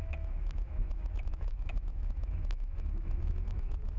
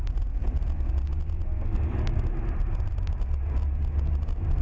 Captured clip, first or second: second